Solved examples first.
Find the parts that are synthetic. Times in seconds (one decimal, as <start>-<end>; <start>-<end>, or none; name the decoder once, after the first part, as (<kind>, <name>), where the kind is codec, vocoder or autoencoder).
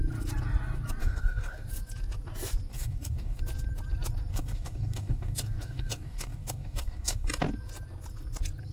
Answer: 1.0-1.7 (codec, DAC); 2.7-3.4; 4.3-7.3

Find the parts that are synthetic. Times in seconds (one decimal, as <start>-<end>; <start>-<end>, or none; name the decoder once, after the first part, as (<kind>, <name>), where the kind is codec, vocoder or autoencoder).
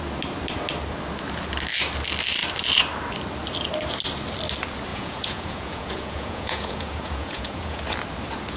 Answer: 4.9-7.8 (vocoder, Vocos)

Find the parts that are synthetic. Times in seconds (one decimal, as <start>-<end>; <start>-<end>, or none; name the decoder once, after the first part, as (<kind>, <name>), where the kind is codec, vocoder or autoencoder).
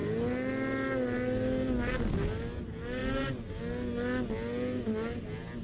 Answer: none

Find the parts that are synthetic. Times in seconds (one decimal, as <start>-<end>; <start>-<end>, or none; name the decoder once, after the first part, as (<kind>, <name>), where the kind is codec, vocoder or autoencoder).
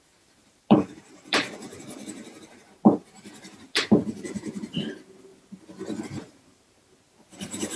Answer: 0.0-5.3 (vocoder, BigVGAN v2); 6.0-7.8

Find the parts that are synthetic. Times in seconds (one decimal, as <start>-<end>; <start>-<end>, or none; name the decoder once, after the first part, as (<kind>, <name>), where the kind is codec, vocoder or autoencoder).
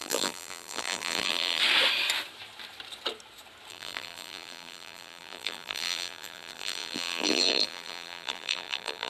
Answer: 0.0-1.6 (vocoder, BigVGAN v2); 3.7-9.1